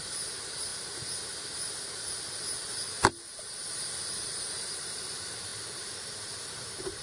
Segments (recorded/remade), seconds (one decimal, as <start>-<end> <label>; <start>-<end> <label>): 0.0-0.7 remade; 0.7-4.0 recorded; 4.0-7.0 remade